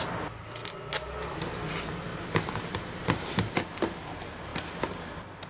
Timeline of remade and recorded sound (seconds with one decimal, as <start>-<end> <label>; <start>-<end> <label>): 0.0-2.1 recorded; 2.1-3.2 remade; 3.2-5.5 recorded